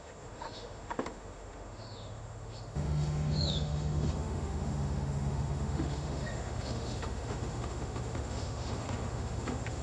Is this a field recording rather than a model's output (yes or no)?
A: no